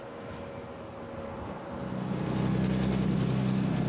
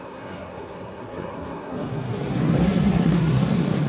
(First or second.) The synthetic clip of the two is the second